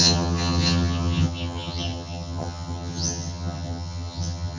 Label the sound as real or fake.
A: fake